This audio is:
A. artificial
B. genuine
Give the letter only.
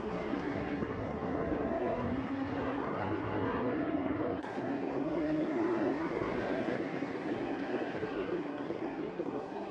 A